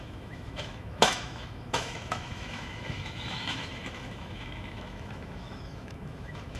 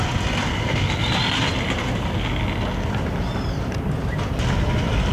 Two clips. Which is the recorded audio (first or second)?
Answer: second